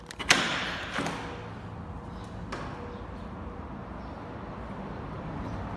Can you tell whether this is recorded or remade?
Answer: recorded